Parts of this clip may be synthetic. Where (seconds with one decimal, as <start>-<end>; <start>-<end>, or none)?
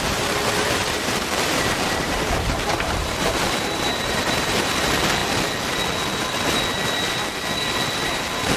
0.8-4.6